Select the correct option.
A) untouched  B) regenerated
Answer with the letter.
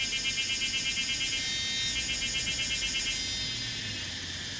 A